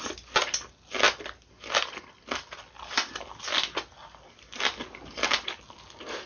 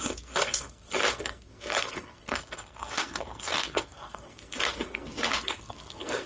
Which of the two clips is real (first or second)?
first